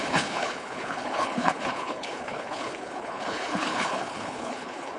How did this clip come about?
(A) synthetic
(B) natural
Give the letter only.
A